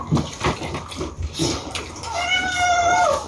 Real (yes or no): yes